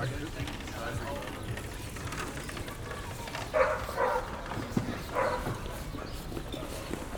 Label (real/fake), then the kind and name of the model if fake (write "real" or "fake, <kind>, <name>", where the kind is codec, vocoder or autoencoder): real